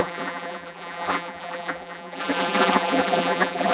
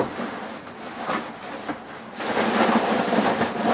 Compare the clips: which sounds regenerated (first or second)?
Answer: first